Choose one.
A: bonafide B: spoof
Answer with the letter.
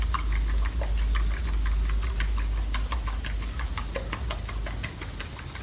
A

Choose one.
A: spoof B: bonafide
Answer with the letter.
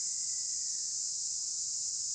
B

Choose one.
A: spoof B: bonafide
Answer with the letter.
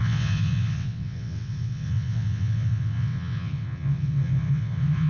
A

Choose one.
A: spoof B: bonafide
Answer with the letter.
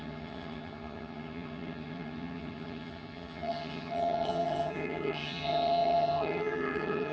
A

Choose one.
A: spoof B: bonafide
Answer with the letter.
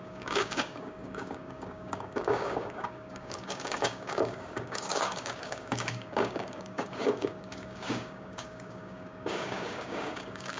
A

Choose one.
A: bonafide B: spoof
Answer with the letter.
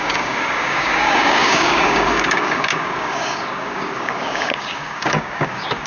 B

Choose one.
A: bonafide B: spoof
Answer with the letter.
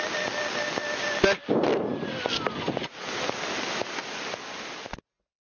A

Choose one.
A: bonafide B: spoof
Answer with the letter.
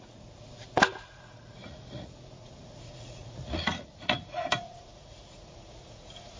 B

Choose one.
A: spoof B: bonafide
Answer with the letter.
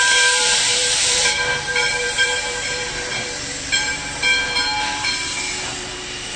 A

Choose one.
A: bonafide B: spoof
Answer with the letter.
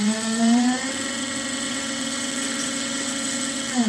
B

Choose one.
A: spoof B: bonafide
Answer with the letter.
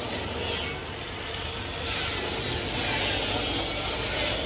B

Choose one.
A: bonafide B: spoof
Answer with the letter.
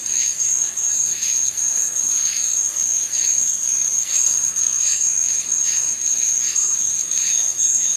B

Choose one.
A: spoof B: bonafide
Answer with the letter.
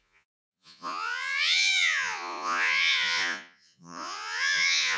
A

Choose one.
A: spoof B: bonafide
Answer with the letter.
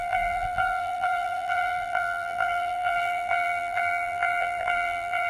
A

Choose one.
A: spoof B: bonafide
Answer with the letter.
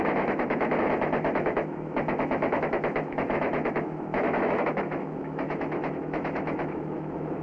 A